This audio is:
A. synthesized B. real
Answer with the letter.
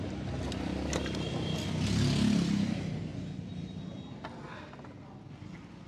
B